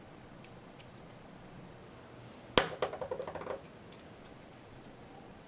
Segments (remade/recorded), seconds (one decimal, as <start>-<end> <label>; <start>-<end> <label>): 0.0-1.8 remade; 1.8-4.2 recorded; 4.2-5.5 remade